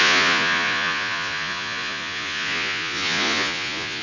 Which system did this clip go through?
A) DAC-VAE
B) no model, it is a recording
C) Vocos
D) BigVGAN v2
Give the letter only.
C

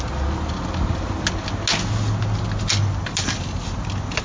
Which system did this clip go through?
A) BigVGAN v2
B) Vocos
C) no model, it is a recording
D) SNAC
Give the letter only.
C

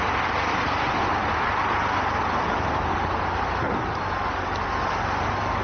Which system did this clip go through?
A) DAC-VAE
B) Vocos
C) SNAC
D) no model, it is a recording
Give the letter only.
D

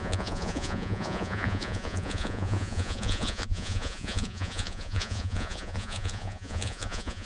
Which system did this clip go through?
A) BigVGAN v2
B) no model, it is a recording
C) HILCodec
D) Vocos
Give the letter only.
D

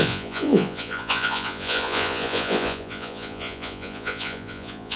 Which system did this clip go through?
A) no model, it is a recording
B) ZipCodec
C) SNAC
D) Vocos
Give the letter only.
D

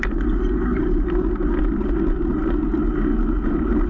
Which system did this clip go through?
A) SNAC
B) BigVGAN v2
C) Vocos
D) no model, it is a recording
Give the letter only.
D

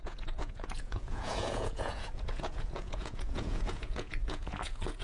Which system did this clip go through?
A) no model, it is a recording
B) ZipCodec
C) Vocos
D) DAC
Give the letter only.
C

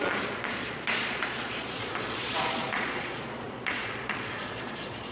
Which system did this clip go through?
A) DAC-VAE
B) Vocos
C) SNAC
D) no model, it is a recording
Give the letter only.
B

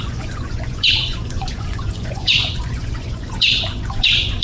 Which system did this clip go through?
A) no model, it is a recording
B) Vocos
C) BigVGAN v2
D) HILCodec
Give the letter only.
B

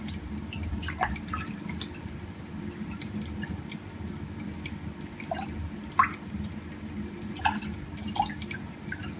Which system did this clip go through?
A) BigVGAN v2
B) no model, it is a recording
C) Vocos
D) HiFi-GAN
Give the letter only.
B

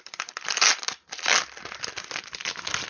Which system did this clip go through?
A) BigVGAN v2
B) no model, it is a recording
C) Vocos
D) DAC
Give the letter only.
B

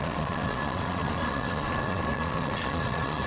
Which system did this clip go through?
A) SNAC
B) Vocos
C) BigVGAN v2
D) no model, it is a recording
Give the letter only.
B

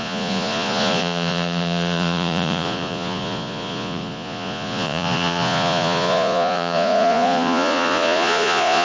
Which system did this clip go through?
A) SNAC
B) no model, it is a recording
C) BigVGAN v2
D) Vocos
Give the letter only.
D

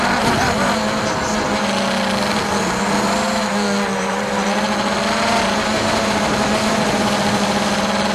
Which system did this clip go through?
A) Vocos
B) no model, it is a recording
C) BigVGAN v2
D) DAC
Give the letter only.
B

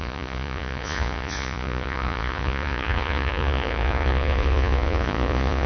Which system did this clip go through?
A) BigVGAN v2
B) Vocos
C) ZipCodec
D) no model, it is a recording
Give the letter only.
B